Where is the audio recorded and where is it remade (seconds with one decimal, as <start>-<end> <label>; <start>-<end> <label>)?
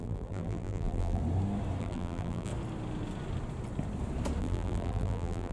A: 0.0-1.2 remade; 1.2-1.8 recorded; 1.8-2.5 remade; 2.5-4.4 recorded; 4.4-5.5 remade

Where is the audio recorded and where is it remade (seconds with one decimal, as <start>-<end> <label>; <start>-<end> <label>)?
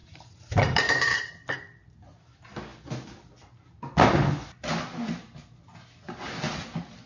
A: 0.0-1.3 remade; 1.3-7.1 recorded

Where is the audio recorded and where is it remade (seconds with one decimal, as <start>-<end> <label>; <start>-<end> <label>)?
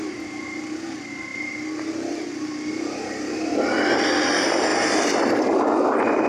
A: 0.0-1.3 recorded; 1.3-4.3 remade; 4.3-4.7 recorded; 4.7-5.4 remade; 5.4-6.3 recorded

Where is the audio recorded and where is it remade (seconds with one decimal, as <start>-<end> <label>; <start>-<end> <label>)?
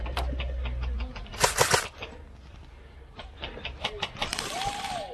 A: 0.0-5.1 remade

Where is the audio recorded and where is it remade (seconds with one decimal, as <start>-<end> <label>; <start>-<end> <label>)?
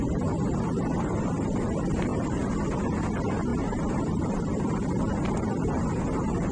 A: 0.0-2.1 recorded; 2.1-2.7 remade; 2.7-3.5 recorded; 3.5-4.6 remade; 4.6-6.5 recorded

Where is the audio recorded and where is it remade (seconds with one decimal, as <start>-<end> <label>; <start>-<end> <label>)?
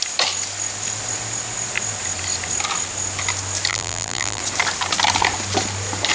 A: 0.0-3.7 recorded; 3.7-4.4 remade; 4.4-6.1 recorded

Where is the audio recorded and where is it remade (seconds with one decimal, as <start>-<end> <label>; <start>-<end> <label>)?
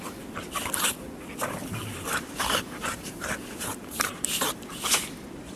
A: 0.0-1.6 recorded; 1.6-5.0 remade; 5.0-5.6 recorded